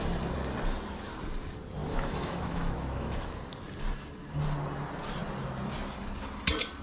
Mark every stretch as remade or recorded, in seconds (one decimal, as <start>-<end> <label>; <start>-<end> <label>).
0.0-1.8 recorded; 1.8-3.3 remade; 3.3-6.8 recorded